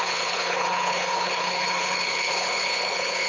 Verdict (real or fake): fake